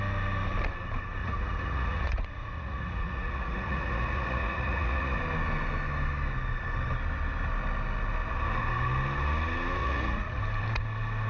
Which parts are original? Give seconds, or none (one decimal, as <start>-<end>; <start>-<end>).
0.0-1.2; 5.2-9.8; 10.4-11.3